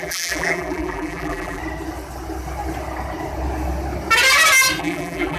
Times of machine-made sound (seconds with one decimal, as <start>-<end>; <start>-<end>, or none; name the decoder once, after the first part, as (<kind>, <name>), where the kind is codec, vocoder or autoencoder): 0.0-1.6 (vocoder, BigVGAN v2); 4.8-5.4